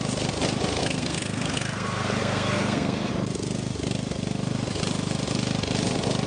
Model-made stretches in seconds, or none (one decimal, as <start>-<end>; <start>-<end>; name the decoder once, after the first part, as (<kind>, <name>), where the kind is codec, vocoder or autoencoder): 0.8-3.1 (codec, SNAC)